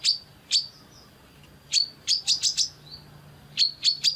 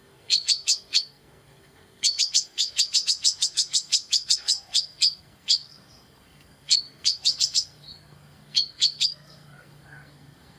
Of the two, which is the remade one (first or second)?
second